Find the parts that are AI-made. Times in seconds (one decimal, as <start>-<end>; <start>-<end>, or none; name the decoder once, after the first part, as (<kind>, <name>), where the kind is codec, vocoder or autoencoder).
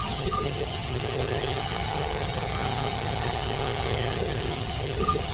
0.0-5.3 (vocoder, HiFi-GAN)